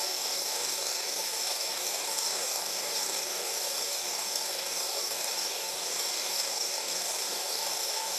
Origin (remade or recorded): remade